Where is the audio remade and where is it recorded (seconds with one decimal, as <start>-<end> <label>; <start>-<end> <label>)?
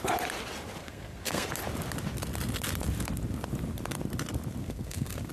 0.0-0.8 recorded; 0.8-1.5 remade; 1.5-4.6 recorded; 4.6-5.3 remade